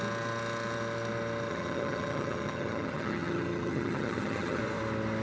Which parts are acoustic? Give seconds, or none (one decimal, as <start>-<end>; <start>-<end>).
0.0-1.5; 4.6-5.2